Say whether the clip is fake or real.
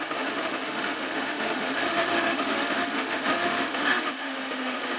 fake